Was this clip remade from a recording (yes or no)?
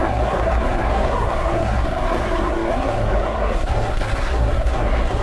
yes